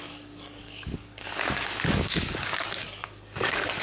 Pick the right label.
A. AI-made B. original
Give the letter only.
A